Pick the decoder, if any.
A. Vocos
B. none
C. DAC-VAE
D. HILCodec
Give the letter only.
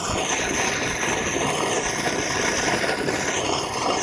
B